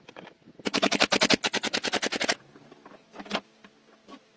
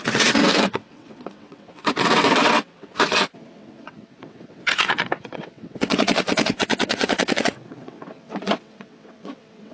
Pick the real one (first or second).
first